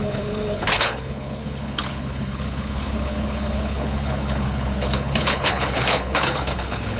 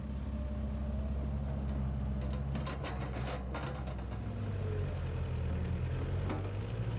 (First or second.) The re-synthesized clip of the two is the first